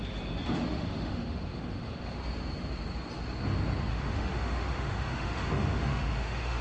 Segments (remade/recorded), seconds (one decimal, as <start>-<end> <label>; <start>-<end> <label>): 0.0-0.6 recorded; 0.6-2.2 remade; 2.2-3.9 recorded; 3.9-6.6 remade